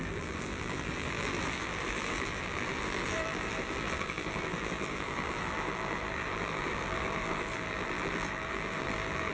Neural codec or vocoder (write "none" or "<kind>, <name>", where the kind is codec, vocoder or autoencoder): vocoder, BigVGAN v2